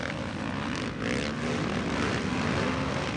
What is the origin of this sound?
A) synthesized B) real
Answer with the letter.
B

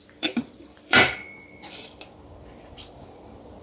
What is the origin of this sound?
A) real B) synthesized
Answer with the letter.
B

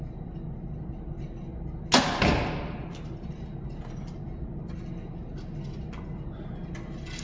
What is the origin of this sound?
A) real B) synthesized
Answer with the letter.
A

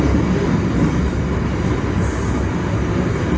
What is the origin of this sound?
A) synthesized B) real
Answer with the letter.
B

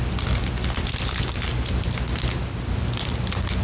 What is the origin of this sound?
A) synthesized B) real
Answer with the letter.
B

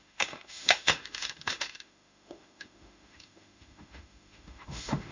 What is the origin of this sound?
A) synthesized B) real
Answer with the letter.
A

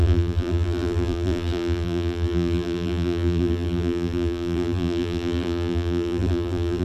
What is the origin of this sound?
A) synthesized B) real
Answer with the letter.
A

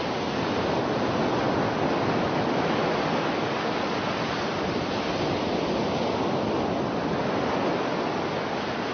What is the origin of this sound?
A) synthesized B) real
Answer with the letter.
B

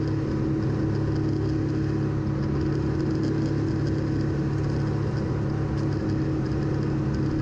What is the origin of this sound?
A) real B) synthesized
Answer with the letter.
A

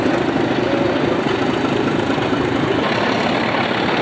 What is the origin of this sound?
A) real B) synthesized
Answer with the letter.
A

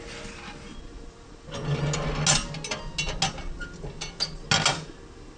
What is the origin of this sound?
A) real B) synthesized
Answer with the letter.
A